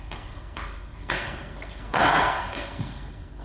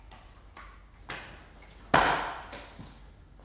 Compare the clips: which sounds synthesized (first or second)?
first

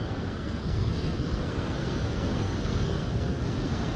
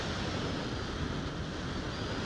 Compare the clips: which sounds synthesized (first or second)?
first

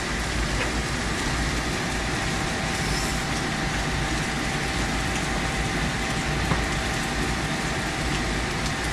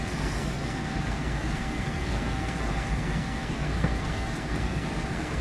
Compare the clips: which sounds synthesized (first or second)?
second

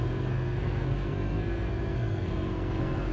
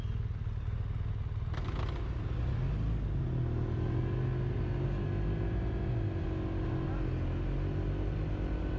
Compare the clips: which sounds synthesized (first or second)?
first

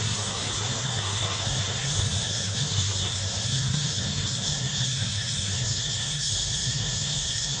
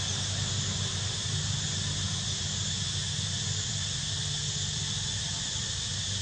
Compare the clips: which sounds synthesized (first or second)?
first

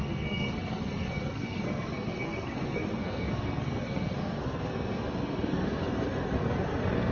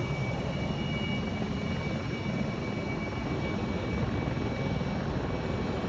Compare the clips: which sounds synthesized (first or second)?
first